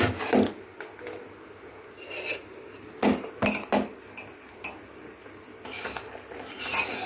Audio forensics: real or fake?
real